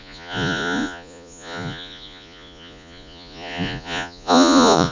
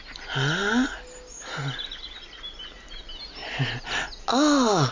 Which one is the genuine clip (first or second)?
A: second